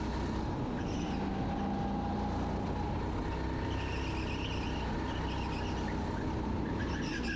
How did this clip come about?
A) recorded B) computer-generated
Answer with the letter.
A